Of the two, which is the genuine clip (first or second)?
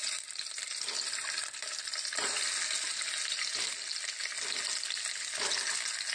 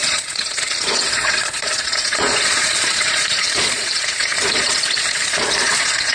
first